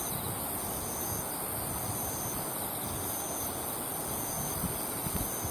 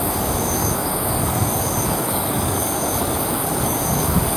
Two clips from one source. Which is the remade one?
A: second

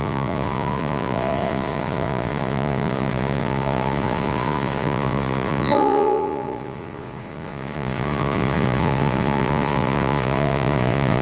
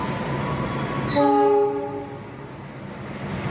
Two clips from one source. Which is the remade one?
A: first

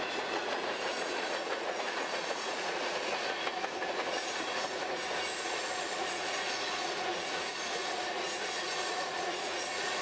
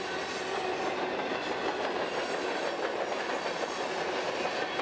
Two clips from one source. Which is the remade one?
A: first